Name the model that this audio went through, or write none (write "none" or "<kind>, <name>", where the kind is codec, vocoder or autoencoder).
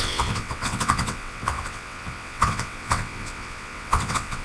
vocoder, WaveNeXt